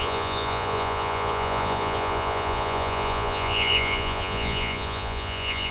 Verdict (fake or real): fake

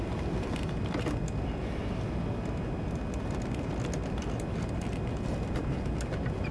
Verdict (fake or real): real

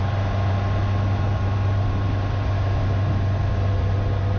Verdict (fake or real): real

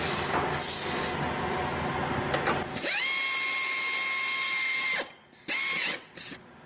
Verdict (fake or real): real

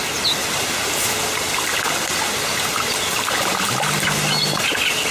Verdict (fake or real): real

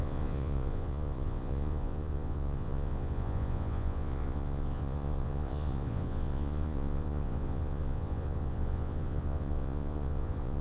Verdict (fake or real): fake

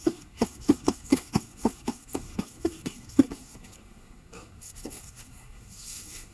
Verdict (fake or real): fake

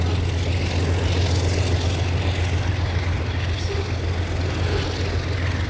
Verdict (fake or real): real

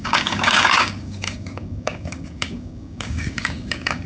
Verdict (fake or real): fake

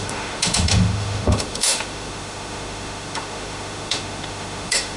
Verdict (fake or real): fake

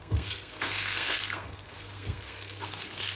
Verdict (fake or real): fake